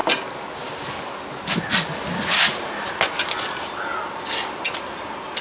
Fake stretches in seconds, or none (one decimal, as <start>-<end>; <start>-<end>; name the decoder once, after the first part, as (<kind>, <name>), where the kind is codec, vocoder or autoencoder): none